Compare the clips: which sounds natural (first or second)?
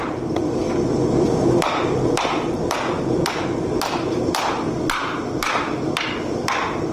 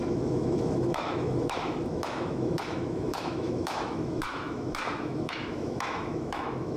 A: first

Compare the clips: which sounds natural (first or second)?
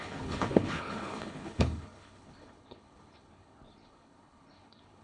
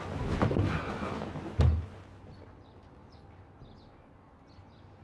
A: second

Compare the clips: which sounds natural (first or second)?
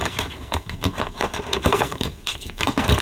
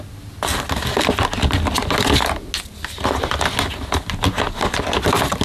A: second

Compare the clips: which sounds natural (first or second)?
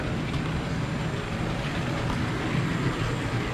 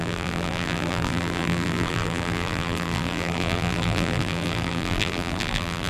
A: first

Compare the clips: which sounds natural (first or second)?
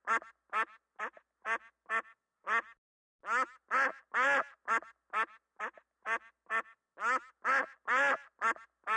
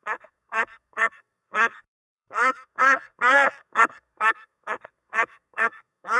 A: first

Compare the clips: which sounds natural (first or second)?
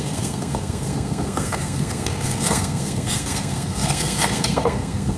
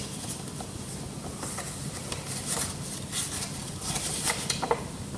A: second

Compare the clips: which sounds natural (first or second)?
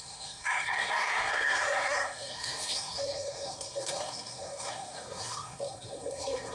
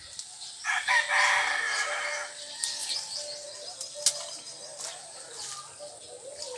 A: second